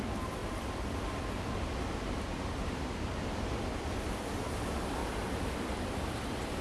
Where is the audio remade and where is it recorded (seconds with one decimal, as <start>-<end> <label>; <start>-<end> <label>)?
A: 0.0-6.6 recorded